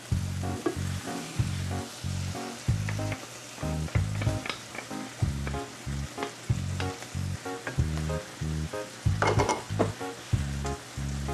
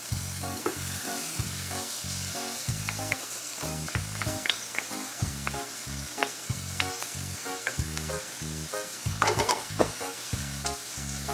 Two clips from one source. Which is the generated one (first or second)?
second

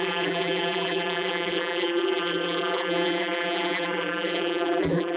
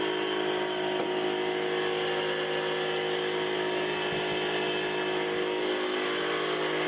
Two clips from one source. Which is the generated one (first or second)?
first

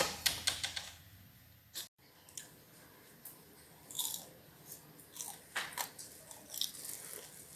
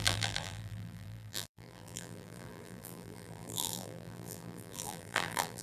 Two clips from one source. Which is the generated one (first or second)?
second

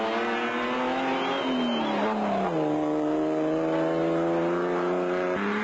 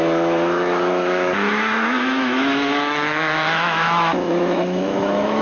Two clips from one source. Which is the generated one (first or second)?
second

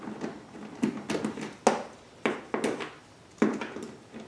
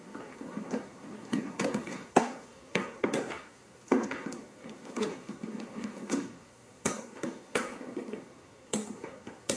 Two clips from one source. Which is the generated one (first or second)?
second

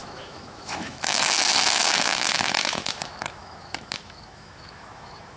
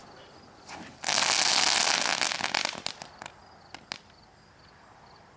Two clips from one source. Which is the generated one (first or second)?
first